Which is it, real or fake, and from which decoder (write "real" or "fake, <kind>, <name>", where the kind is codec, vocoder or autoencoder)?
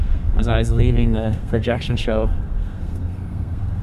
fake, codec, SNAC